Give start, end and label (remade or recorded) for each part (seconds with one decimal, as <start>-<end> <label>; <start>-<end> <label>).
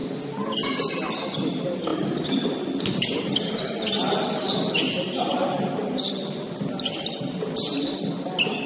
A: 0.0-8.7 recorded